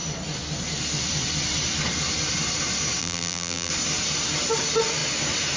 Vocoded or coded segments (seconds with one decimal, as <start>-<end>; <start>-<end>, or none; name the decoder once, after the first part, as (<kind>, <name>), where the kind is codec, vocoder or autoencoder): 3.0-3.7 (vocoder, BigVGAN v2)